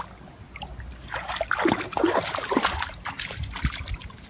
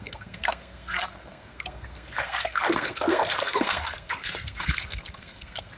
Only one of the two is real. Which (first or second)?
first